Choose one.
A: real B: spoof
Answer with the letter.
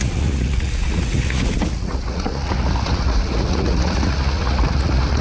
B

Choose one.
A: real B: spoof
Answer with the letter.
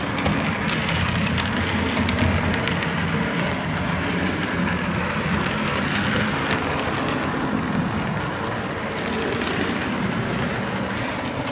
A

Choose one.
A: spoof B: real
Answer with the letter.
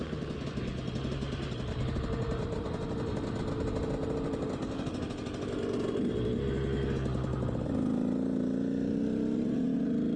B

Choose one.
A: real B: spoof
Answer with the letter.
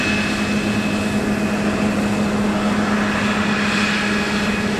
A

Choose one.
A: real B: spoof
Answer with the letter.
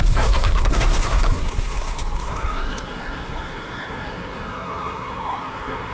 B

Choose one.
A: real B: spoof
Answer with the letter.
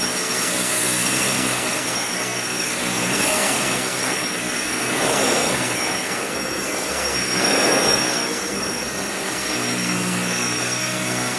B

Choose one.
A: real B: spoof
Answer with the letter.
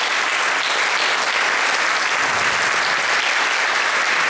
A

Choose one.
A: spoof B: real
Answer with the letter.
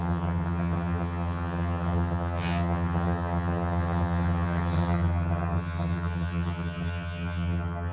A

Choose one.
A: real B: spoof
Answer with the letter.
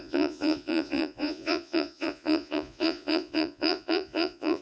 B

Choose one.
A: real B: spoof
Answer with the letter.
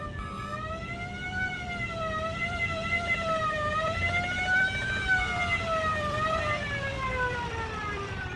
B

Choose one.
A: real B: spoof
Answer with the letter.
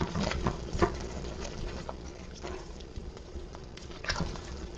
B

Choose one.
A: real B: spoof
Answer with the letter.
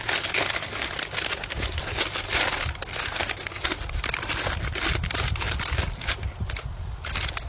A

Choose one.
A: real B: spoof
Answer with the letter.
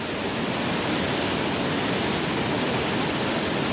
A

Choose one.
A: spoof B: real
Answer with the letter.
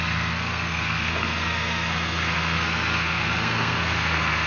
A